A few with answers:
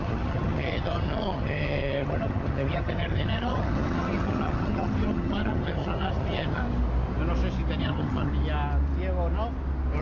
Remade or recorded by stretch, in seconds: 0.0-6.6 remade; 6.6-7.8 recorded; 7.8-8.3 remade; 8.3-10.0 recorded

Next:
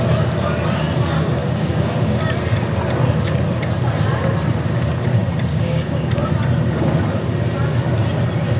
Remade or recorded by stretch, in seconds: 0.0-1.4 recorded; 1.4-2.2 remade; 2.2-5.5 recorded; 5.5-6.2 remade; 6.2-8.6 recorded

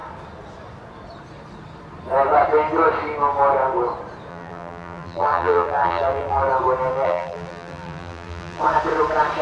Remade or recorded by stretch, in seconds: 0.0-4.3 recorded; 4.3-6.5 remade; 6.5-6.9 recorded; 6.9-8.6 remade; 8.6-9.4 recorded

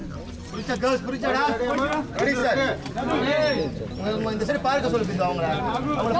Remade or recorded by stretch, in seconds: 0.0-6.2 recorded

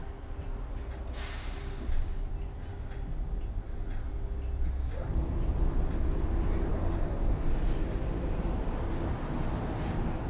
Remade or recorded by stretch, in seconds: 0.0-10.3 recorded

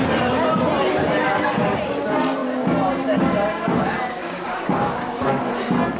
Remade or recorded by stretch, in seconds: 0.0-4.2 recorded; 4.2-5.4 remade; 5.4-6.0 recorded